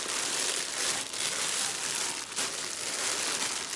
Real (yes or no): yes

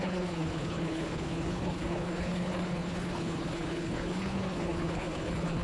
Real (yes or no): no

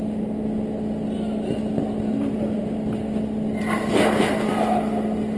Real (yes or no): yes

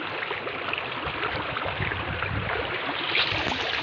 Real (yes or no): yes